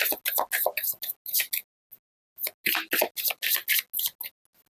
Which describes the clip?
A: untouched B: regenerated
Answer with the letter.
A